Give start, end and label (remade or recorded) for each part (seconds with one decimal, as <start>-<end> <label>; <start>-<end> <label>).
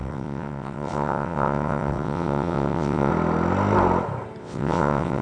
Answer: 0.0-3.1 remade; 3.1-4.4 recorded; 4.4-5.2 remade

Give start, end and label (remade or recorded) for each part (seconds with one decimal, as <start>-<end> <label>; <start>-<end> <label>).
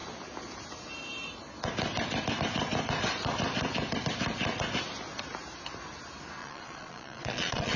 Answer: 0.0-6.4 recorded; 6.4-7.8 remade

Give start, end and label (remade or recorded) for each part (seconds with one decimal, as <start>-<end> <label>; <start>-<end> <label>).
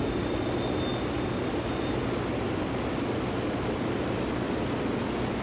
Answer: 0.0-5.4 recorded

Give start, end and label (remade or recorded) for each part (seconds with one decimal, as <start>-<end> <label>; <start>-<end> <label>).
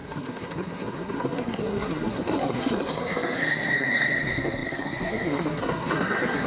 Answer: 0.0-6.5 remade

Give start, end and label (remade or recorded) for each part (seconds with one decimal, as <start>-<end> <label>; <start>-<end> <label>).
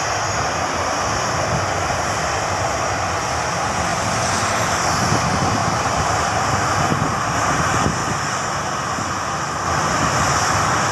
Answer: 0.0-3.9 recorded; 3.9-4.5 remade; 4.5-5.6 recorded; 5.6-6.8 remade; 6.8-10.9 recorded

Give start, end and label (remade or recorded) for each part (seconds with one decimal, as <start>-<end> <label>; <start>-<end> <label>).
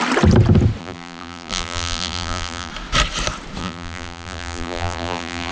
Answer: 0.0-0.8 recorded; 0.8-2.7 remade; 2.7-3.6 recorded; 3.6-5.5 remade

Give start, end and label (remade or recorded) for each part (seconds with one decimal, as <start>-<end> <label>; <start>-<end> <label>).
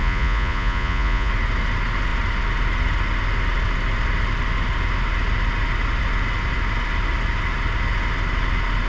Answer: 0.0-1.3 remade; 1.3-8.9 recorded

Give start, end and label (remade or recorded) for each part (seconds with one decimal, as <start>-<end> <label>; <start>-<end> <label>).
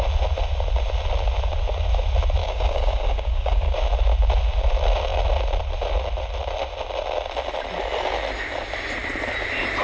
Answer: 0.0-2.4 recorded; 2.4-3.7 remade; 3.7-9.8 recorded